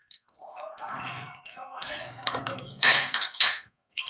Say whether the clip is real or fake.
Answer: fake